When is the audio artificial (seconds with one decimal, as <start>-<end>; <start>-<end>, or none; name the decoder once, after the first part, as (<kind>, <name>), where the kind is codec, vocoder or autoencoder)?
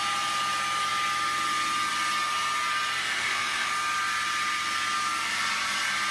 3.0-3.7 (autoencoder, DAC-VAE)